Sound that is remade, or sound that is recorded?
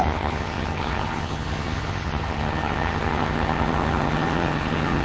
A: remade